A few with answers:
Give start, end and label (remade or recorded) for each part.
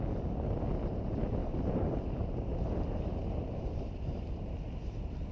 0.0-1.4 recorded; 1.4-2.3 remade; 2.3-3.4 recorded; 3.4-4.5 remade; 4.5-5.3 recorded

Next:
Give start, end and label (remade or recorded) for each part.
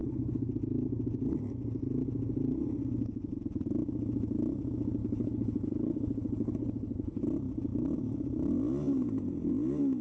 0.0-0.5 remade; 0.5-5.0 recorded; 5.0-7.2 remade; 7.2-10.0 recorded